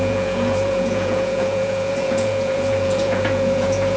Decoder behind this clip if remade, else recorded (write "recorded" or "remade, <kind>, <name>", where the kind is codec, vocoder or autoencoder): remade, vocoder, Vocos